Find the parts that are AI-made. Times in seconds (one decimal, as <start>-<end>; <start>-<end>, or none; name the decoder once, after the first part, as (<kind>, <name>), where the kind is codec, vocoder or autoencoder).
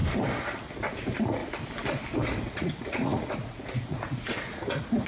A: 0.9-1.4 (vocoder, Vocos); 2.4-5.1